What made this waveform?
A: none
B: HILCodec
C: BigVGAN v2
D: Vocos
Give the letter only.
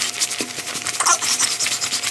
A